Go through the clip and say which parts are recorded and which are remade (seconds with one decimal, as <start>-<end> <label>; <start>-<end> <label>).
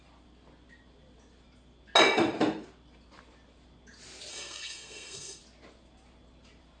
0.0-4.3 recorded; 4.3-5.4 remade; 5.4-6.8 recorded